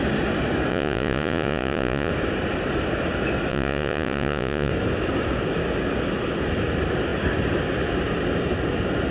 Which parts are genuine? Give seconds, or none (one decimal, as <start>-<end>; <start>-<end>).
0.0-0.7; 2.1-3.5; 4.7-9.1